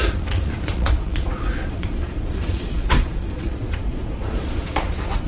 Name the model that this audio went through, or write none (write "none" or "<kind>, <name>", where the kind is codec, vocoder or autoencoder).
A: vocoder, Vocos